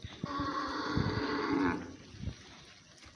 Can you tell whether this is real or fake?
real